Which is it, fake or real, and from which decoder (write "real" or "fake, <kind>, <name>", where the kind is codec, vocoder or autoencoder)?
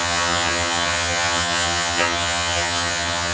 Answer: fake, vocoder, HiFi-GAN